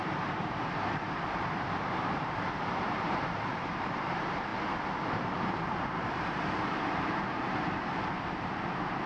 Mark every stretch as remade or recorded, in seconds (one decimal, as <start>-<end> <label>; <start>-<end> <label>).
0.0-4.5 remade; 4.5-5.1 recorded; 5.1-9.1 remade